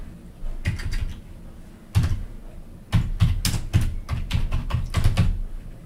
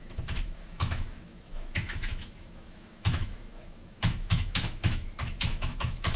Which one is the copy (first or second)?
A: second